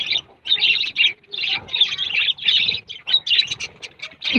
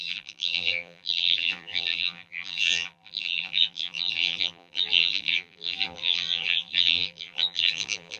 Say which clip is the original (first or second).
first